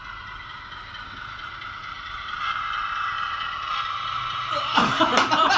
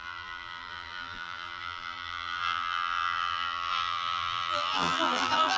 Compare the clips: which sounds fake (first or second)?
second